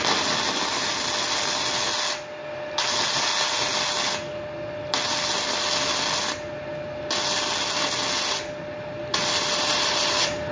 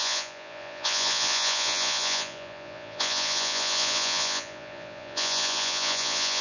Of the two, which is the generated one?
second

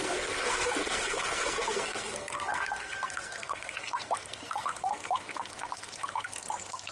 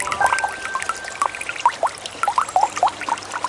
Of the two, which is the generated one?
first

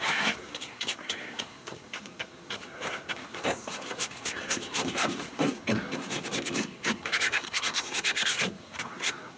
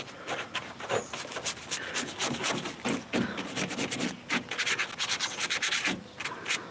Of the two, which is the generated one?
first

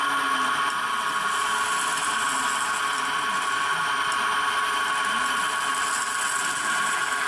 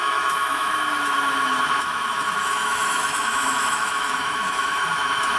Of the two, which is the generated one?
second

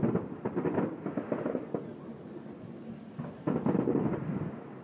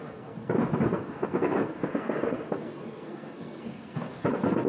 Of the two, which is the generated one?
second